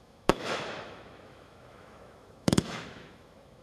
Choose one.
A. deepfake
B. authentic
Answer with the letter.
A